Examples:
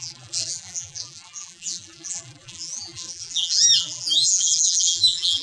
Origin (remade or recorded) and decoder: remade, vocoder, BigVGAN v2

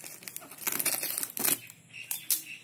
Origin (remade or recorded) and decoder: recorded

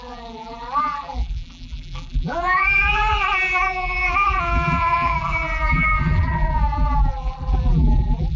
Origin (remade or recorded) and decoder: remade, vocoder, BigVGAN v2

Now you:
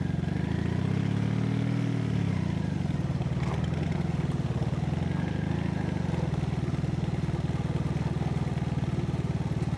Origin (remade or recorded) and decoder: recorded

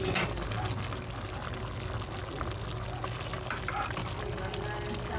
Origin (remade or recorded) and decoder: recorded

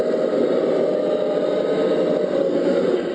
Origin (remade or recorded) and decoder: recorded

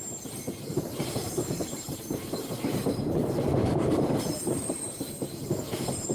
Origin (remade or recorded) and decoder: remade, vocoder, BigVGAN v2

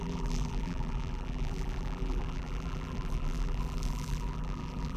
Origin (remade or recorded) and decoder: remade, vocoder, BigVGAN v2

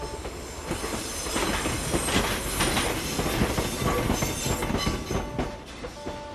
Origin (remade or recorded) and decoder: recorded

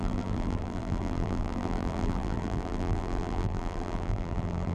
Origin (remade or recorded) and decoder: remade, vocoder, BigVGAN v2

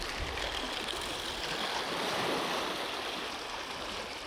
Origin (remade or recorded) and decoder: recorded